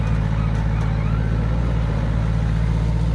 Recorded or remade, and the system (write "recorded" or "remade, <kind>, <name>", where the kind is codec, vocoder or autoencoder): recorded